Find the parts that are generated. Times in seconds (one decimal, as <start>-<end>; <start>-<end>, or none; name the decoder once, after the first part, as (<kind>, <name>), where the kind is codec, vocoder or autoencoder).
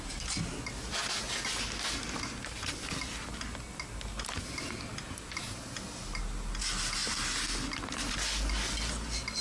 none